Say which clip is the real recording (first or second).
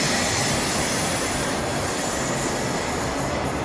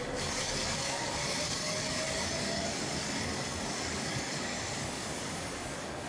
first